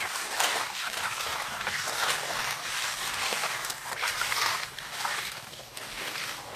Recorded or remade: remade